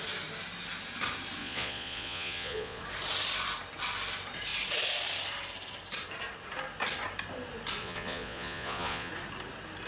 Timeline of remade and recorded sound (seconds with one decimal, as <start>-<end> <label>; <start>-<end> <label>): 0.0-1.4 recorded; 1.4-2.8 remade; 2.8-7.8 recorded; 7.8-9.1 remade; 9.1-9.9 recorded